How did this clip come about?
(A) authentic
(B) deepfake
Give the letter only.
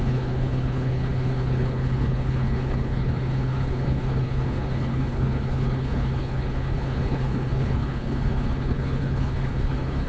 B